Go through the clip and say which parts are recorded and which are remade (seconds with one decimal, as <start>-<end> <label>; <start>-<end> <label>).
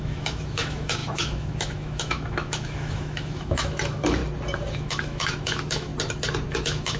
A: 0.0-4.2 remade; 4.2-4.7 recorded; 4.7-5.9 remade; 5.9-6.5 recorded; 6.5-7.0 remade